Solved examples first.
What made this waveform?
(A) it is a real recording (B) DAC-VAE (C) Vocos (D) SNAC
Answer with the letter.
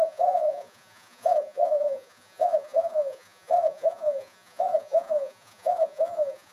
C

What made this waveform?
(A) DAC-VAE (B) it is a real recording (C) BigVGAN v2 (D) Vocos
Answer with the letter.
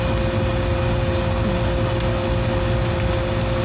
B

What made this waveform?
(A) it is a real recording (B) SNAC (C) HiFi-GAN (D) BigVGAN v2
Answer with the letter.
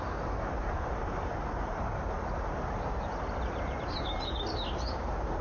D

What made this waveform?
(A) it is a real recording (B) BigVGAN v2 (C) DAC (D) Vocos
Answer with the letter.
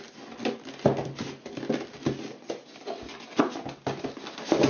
A